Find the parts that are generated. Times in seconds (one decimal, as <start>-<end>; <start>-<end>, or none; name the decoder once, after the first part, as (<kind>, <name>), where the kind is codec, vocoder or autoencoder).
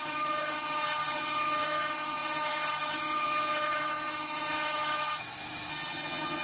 0.0-5.2 (vocoder, HiFi-GAN); 5.7-6.4